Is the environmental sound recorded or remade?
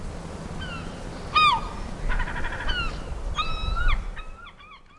recorded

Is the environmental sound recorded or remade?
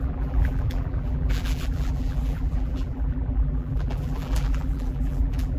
remade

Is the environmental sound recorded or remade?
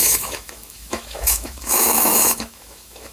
remade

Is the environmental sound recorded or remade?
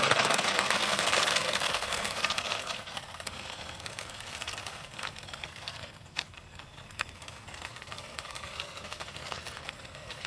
remade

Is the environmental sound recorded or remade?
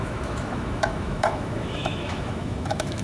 remade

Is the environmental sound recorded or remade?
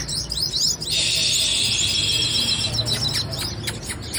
recorded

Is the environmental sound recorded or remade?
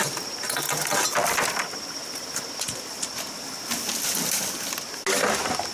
recorded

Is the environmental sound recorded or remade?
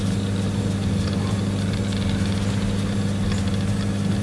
recorded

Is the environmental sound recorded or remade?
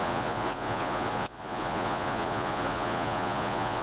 remade